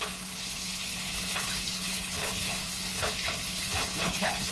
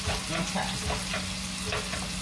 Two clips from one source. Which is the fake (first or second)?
first